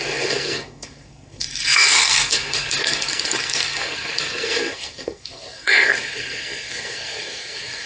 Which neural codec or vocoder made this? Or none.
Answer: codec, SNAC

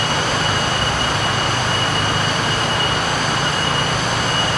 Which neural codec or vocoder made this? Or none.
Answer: none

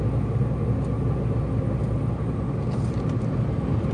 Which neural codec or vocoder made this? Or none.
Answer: none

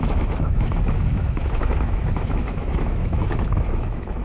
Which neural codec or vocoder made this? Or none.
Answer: autoencoder, DAC-VAE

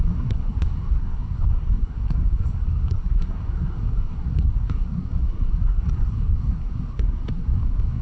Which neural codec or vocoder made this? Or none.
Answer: codec, SNAC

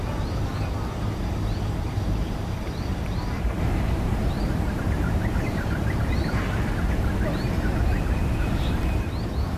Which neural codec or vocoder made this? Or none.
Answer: vocoder, BigVGAN v2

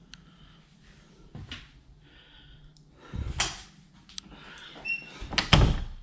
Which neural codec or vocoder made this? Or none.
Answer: none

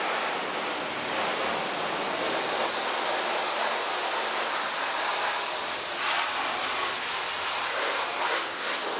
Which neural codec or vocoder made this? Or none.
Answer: none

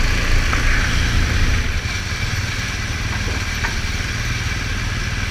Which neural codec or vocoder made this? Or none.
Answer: none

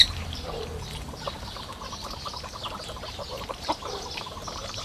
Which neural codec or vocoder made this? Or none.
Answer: vocoder, BigVGAN v2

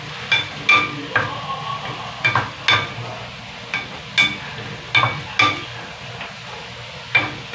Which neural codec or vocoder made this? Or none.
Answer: none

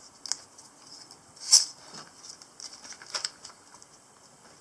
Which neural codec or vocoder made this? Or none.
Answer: none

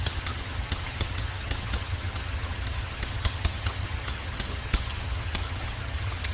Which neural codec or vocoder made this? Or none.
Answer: vocoder, HiFi-GAN